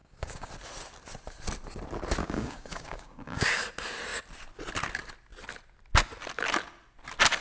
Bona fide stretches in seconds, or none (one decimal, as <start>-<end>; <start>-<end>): 0.5-2.2; 3.6-7.4